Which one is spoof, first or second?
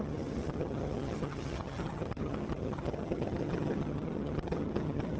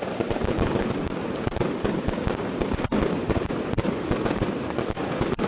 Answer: first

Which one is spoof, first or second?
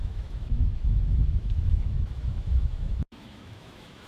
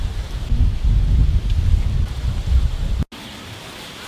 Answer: first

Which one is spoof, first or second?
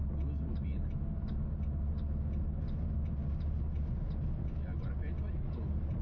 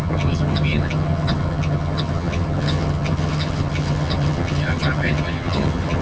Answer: second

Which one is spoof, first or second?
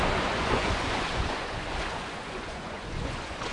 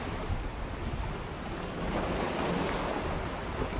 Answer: first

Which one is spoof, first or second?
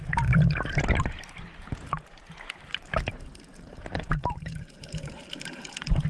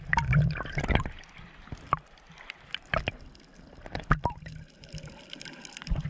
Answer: first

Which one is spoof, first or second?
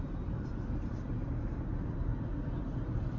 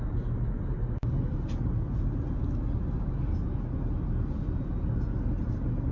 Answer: first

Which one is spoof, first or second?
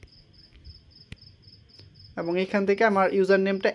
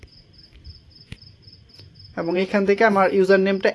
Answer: second